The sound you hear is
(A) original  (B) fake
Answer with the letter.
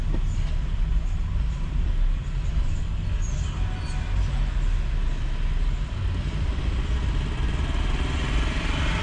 A